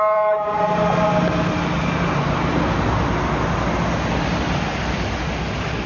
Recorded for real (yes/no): yes